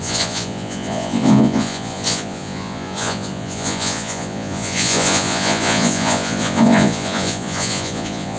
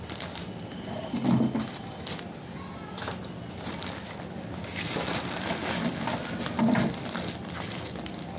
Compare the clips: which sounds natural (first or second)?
second